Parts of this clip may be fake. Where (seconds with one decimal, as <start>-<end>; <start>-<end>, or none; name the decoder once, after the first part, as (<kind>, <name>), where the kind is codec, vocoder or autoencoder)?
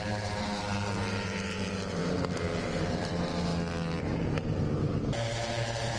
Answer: 0.0-2.0 (vocoder, BigVGAN v2); 2.6-3.5; 4.0-6.0